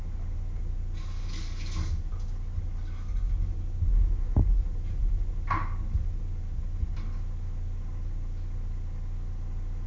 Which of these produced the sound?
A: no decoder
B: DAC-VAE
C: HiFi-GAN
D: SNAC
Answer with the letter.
A